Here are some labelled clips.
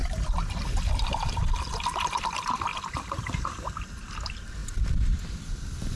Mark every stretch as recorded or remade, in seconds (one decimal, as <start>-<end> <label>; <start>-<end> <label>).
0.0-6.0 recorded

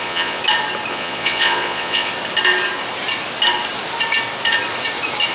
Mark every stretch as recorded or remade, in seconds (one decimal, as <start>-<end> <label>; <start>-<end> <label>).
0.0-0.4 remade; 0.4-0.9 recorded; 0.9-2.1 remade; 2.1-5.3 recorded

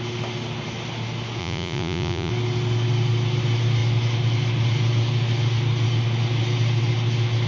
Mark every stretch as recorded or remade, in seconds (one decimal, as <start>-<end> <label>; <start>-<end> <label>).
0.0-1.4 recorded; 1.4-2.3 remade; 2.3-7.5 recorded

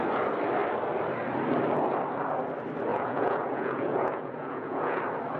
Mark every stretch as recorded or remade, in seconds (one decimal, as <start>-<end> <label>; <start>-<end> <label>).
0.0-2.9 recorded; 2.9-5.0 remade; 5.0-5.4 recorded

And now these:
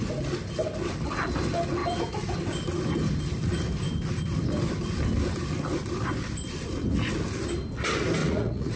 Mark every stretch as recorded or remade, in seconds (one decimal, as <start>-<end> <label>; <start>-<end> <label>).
0.0-8.2 recorded; 8.2-8.8 remade

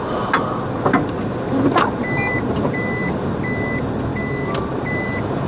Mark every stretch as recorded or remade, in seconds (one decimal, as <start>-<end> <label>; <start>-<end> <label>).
0.0-5.5 recorded

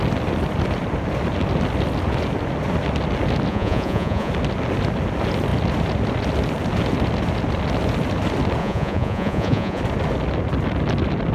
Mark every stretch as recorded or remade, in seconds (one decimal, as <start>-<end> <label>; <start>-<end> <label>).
0.0-3.5 recorded; 3.5-4.3 remade; 4.3-8.6 recorded; 8.6-9.8 remade; 9.8-11.3 recorded